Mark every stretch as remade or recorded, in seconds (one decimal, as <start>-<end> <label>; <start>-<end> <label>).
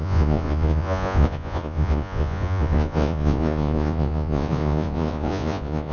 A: 0.0-5.9 remade